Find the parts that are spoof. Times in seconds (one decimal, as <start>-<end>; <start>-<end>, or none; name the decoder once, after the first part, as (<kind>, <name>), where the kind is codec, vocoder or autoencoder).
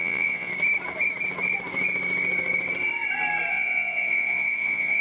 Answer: 0.0-0.5 (vocoder, Vocos); 3.5-5.0